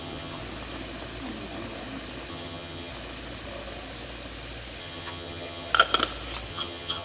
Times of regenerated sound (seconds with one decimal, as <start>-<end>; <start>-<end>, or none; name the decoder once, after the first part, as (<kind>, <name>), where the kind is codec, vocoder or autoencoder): 0.0-0.4 (vocoder, HiFi-GAN); 2.3-2.9; 4.8-5.7; 6.5-7.0